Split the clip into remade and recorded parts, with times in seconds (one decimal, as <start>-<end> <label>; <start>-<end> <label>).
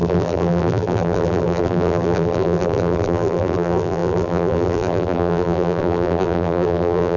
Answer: 0.0-7.2 remade